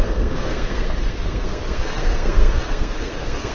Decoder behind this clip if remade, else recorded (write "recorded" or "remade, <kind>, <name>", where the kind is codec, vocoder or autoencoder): remade, codec, SNAC